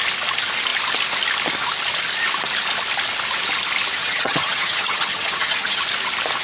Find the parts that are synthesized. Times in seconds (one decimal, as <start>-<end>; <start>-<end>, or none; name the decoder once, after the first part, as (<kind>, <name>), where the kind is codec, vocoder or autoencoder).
4.0-5.8 (vocoder, HiFi-GAN)